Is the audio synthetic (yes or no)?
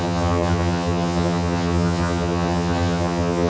yes